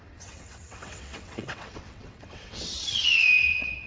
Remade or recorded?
remade